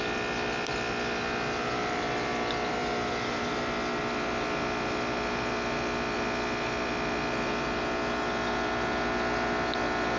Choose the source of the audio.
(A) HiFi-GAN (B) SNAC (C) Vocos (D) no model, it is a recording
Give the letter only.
D